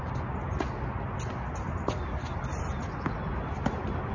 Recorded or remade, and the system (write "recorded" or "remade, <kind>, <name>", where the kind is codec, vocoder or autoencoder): recorded